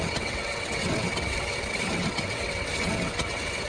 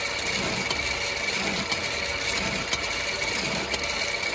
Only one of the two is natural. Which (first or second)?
second